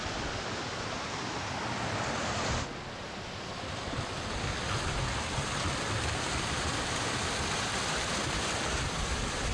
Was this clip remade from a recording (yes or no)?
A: no